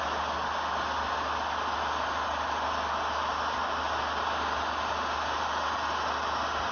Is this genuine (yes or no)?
yes